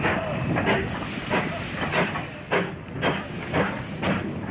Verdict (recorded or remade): recorded